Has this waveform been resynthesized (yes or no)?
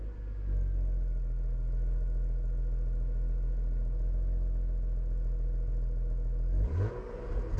no